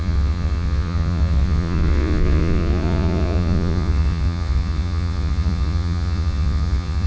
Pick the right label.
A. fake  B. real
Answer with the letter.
A